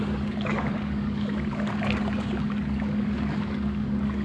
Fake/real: fake